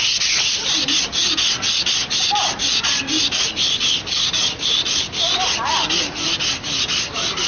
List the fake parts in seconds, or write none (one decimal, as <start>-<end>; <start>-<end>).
none